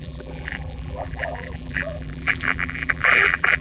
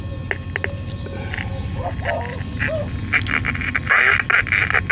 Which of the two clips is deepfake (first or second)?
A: first